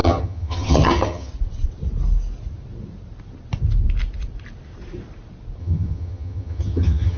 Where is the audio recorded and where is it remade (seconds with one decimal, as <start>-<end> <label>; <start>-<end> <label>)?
0.0-1.3 remade; 1.3-5.6 recorded; 5.6-7.2 remade